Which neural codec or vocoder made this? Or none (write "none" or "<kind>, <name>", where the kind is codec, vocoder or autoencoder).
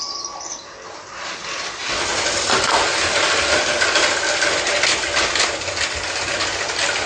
none